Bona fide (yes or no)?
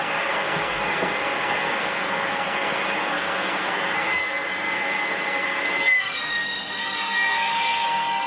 no